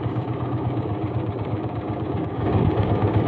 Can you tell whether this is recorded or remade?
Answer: remade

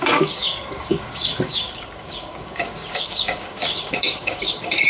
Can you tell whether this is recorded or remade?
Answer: remade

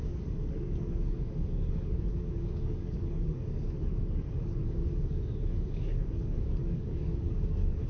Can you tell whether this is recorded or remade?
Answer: remade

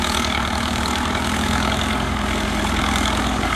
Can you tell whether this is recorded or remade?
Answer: remade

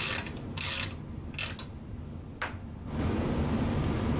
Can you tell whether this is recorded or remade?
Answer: recorded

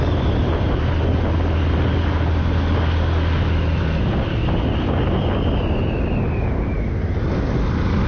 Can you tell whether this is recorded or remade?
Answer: recorded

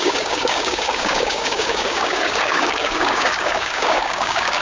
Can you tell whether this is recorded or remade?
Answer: remade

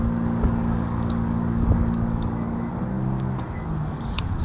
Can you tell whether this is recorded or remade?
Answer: remade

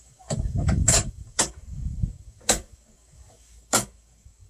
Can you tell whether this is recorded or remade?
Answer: remade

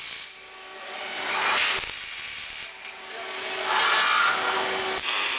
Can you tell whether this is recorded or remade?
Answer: recorded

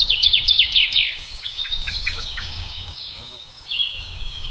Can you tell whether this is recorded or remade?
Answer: remade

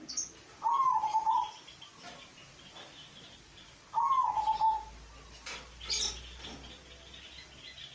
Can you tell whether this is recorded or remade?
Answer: recorded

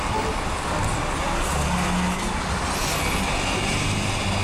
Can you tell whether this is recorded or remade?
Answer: recorded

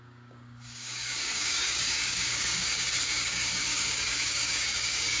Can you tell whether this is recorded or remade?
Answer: remade